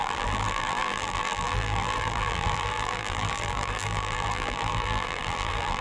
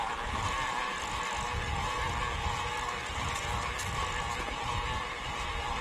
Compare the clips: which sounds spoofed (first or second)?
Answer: first